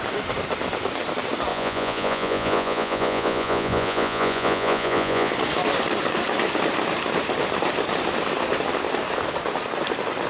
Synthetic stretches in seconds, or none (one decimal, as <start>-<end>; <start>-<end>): 1.5-5.3

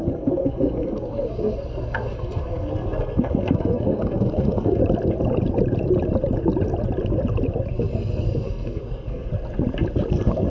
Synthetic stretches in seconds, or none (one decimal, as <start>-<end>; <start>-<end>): 0.0-4.8; 7.7-9.3; 10.1-10.5

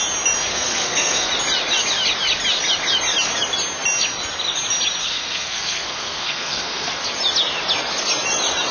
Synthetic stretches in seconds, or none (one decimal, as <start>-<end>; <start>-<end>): 0.5-1.3; 5.0-7.0

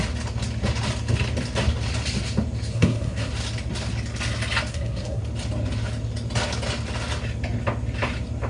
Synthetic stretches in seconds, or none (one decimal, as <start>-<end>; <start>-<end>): 2.7-3.3; 4.7-5.2

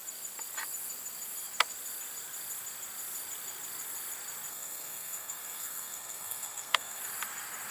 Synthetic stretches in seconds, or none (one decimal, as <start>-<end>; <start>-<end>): 4.5-7.0

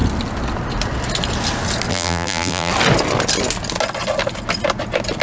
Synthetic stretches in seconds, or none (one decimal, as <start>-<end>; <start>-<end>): 1.9-2.7

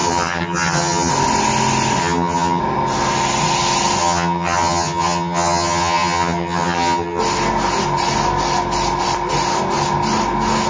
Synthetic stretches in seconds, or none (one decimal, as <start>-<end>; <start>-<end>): 0.0-1.1; 2.0-2.6; 4.0-7.2